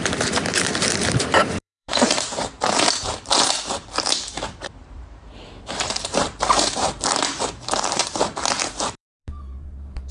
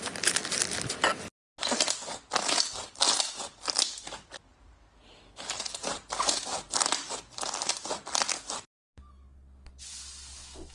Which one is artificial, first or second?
first